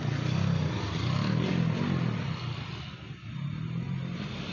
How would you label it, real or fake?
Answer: real